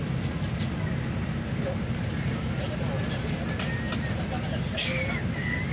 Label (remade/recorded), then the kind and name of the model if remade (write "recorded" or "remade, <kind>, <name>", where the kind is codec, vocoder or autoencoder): recorded